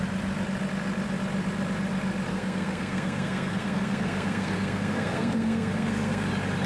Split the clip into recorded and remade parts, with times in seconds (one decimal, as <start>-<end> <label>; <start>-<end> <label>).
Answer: 0.0-2.3 recorded; 2.3-6.3 remade; 6.3-6.7 recorded